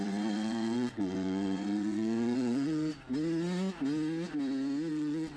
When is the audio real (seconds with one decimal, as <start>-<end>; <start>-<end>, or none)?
2.9-4.9